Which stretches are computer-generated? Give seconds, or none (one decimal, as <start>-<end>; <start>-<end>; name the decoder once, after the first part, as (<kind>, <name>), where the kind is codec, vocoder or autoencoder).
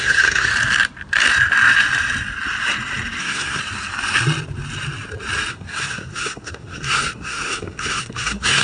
0.0-0.5 (codec, SNAC); 3.2-3.6; 5.5-8.6